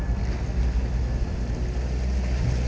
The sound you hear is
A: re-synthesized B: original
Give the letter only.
B